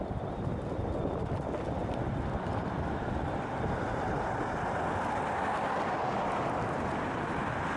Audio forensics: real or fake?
real